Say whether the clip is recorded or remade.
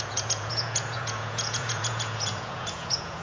remade